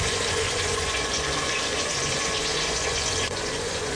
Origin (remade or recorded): remade